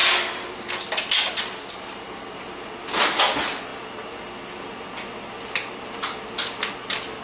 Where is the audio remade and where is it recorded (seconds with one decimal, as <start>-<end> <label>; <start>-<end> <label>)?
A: 0.0-7.2 recorded